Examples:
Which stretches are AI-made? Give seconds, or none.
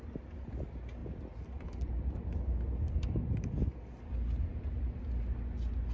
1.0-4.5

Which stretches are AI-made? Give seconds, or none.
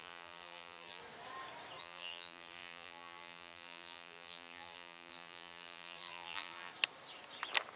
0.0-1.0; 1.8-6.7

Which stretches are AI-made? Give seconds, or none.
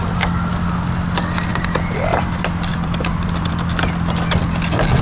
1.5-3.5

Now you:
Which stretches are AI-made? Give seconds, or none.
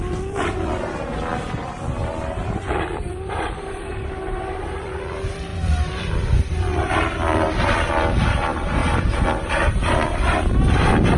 0.0-11.2